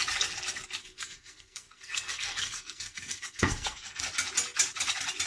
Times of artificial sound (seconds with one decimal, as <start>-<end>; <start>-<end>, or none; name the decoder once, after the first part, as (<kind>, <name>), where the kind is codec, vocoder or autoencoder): 0.8-4.0 (codec, SNAC)